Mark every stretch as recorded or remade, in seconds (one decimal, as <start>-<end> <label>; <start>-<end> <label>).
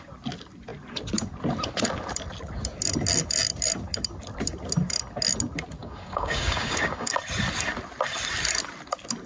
0.0-5.8 recorded; 5.8-7.1 remade; 7.1-9.3 recorded